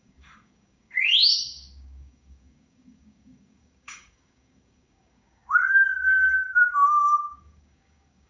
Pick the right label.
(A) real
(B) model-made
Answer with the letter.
B